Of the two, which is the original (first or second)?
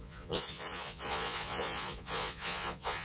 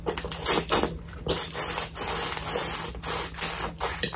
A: second